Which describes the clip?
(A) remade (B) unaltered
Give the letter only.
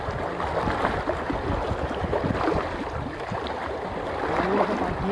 B